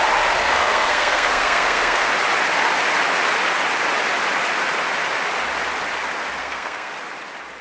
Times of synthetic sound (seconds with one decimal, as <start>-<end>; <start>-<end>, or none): 0.4-2.1; 6.4-6.9